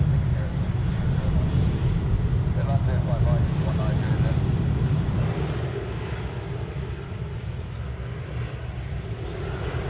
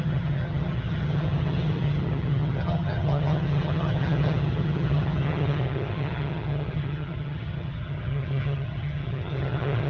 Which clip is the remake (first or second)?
second